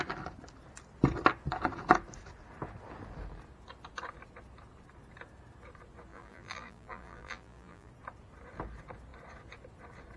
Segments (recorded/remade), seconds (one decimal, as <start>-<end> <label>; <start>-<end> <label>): 0.0-6.1 recorded; 6.1-7.9 remade; 7.9-10.2 recorded

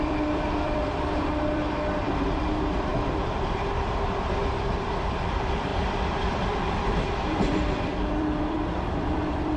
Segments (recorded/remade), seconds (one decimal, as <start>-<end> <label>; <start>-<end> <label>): 0.0-2.9 remade; 2.9-4.9 recorded; 4.9-9.6 remade

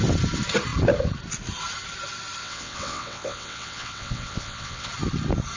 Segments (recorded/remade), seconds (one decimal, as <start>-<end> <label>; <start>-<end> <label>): 0.0-2.4 recorded; 2.4-4.9 remade; 4.9-5.6 recorded

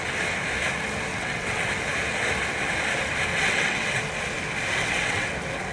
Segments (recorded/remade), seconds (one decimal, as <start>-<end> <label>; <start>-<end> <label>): 0.0-1.1 recorded; 1.1-1.7 remade; 1.7-3.3 recorded; 3.3-4.0 remade; 4.0-4.8 recorded; 4.8-5.3 remade; 5.3-5.7 recorded

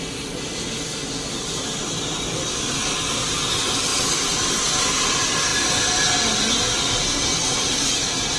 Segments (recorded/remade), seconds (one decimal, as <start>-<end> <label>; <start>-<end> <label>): 0.0-8.4 recorded

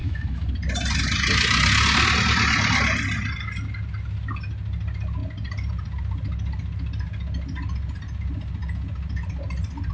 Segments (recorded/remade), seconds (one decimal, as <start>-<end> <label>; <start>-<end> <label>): 0.0-0.5 remade; 0.5-9.9 recorded

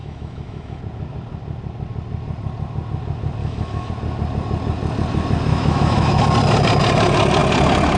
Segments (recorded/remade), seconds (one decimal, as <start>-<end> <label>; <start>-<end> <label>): 0.0-0.8 remade; 0.8-3.4 recorded; 3.4-3.9 remade; 3.9-5.5 recorded; 5.5-6.2 remade; 6.2-8.0 recorded

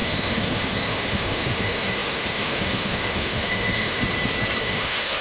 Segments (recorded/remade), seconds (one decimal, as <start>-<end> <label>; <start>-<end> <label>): 0.0-4.0 remade; 4.0-4.6 recorded; 4.6-5.2 remade